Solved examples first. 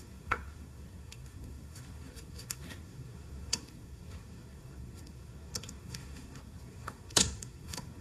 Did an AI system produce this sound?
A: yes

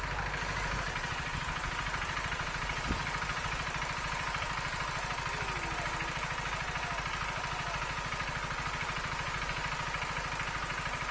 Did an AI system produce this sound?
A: no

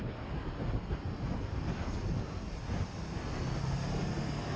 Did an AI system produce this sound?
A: no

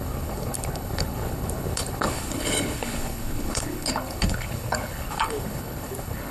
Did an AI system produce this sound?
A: yes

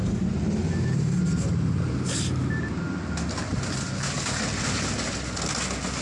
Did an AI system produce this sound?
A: no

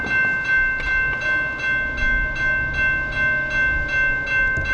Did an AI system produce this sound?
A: no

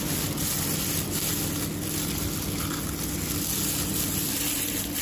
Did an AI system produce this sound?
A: no